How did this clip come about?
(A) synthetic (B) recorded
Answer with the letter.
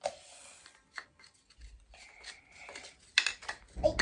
B